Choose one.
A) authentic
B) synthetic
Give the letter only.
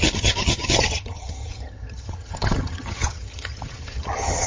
B